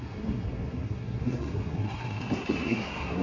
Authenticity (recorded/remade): remade